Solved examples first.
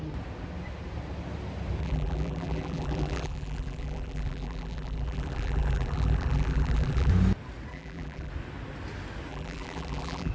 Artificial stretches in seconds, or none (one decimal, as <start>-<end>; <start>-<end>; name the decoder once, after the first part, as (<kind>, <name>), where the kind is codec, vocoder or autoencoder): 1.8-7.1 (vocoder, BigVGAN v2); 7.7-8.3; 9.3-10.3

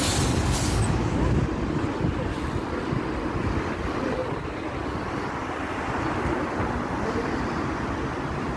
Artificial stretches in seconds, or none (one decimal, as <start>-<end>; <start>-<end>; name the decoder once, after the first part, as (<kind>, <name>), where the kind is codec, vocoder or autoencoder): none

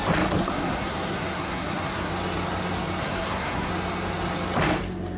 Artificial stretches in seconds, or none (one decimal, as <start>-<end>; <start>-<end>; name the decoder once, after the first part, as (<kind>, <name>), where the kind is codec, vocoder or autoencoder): 0.4-2.1 (codec, SNAC); 3.0-3.7

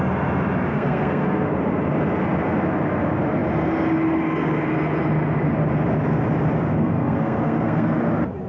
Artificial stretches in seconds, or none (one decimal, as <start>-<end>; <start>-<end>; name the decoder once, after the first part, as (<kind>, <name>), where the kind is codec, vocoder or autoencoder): 0.7-1.5 (codec, SNAC); 6.7-8.0

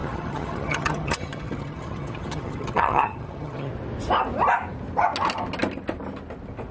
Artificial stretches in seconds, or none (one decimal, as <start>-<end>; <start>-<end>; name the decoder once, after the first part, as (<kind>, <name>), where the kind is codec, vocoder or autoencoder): 0.0-3.7 (vocoder, HiFi-GAN)

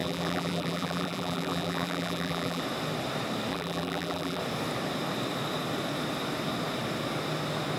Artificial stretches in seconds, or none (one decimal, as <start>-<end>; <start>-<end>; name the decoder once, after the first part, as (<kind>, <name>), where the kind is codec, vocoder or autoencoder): 0.0-2.6 (vocoder, BigVGAN v2); 3.5-4.4

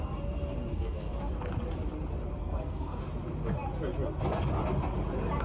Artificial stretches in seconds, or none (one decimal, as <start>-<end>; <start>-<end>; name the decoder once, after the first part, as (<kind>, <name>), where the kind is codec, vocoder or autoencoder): 0.7-1.2 (codec, SNAC); 2.4-3.0

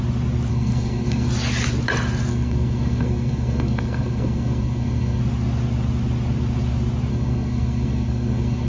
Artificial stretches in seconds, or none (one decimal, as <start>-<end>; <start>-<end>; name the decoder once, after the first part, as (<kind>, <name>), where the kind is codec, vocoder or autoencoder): 0.5-1.3 (codec, SNAC); 2.3-5.2; 7.1-8.7